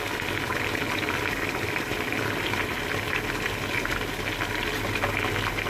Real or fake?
real